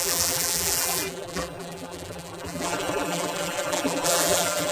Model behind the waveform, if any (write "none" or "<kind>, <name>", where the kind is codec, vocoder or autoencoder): vocoder, BigVGAN v2